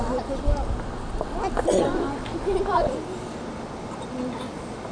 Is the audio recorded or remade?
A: recorded